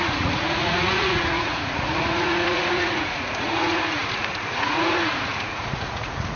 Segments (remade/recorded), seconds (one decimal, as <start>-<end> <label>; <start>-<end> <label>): 0.0-6.4 remade

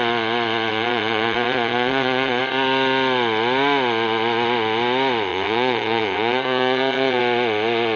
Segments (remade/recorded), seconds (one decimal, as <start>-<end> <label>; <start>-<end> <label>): 0.0-0.7 recorded; 0.7-2.4 remade; 2.4-5.3 recorded; 5.3-7.2 remade; 7.2-8.0 recorded